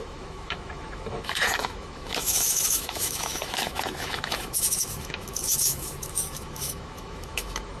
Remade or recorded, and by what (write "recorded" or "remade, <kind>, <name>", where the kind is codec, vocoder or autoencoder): remade, autoencoder, DAC-VAE